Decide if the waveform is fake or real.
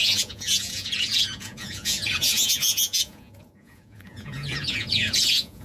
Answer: fake